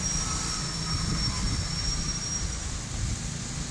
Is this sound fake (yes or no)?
no